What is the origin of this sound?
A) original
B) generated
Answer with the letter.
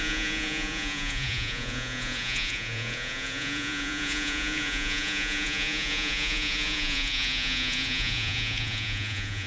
B